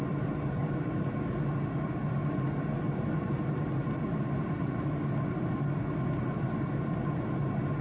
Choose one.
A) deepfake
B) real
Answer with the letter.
B